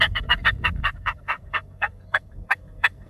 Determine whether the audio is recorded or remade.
remade